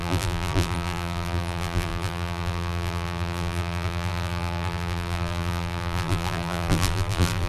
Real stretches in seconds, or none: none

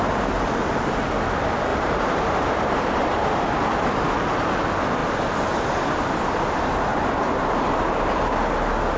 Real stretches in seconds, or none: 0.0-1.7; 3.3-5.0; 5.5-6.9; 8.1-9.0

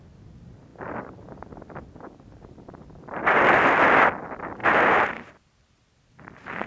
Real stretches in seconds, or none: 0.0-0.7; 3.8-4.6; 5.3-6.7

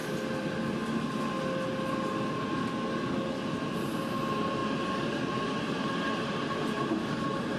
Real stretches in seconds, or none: 0.0-3.7

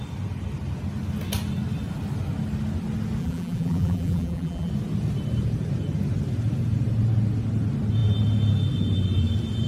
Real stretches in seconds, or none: 0.0-3.2; 4.7-9.7

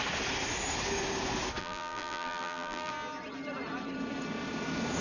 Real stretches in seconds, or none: 0.0-1.6; 2.9-5.0

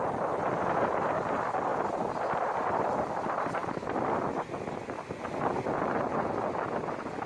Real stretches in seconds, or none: 3.6-5.8

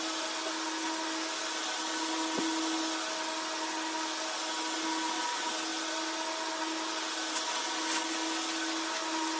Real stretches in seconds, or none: 0.0-9.4